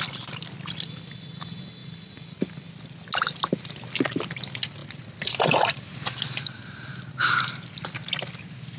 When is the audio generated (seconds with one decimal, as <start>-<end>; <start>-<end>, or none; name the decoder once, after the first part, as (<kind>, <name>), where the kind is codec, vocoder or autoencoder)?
none